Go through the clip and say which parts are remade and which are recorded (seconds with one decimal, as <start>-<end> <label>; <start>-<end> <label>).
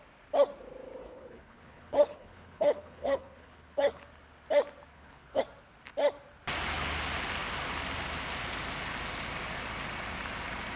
0.0-1.0 recorded; 1.0-4.0 remade; 4.0-4.9 recorded; 4.9-5.4 remade; 5.4-10.8 recorded